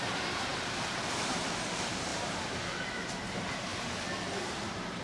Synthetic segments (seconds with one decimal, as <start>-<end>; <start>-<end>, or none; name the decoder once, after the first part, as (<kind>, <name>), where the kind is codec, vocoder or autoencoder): 0.0-3.7 (vocoder, BigVGAN v2); 4.4-5.0